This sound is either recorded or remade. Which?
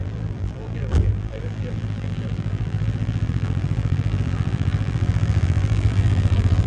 remade